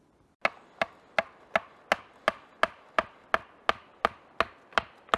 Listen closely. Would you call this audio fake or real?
real